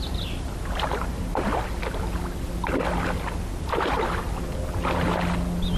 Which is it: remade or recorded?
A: remade